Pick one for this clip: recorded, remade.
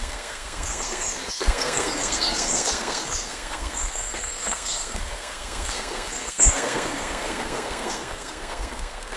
remade